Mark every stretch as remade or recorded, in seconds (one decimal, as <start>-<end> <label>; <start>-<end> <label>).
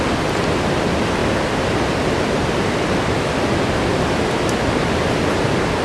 0.0-5.8 recorded